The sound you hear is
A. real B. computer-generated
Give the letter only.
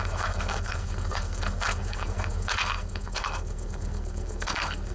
B